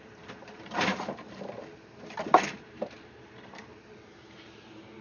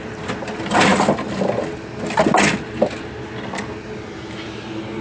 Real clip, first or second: second